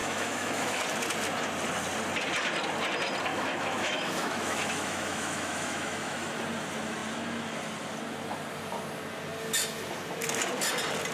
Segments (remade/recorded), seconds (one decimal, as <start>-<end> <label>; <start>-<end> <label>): 0.0-0.8 remade; 0.8-3.3 recorded; 3.3-6.3 remade; 6.3-11.1 recorded